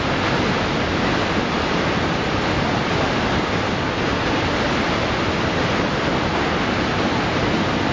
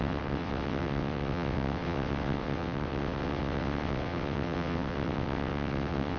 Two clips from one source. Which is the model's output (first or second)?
second